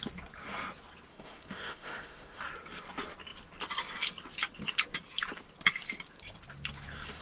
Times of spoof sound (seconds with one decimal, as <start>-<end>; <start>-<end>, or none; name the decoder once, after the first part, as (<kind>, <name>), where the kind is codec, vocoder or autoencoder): 1.1-2.4 (autoencoder, DAC-VAE)